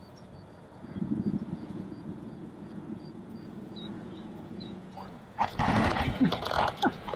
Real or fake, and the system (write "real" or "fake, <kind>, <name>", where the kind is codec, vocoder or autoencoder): fake, vocoder, Vocos